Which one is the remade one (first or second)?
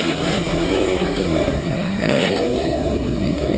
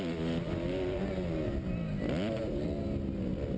first